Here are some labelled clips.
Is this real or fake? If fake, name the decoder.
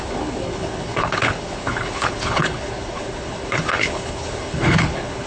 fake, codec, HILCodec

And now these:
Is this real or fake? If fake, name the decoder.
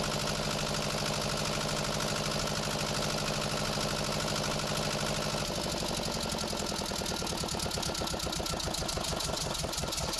real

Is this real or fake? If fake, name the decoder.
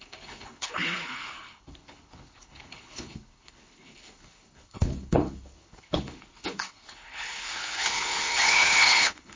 fake, codec, HILCodec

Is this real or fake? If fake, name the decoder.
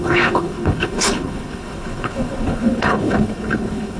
fake, codec, HILCodec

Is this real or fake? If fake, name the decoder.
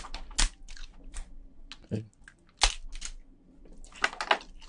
real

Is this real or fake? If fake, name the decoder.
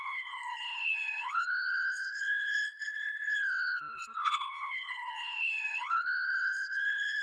fake, codec, HILCodec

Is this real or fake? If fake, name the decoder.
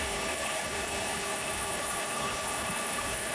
fake, codec, HILCodec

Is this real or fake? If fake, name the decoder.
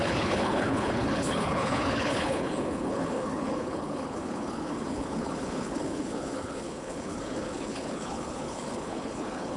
fake, codec, HILCodec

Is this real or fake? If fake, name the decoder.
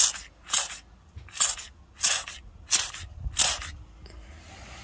real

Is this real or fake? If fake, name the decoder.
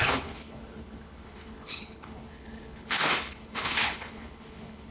fake, codec, HILCodec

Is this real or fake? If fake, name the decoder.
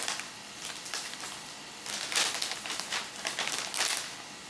real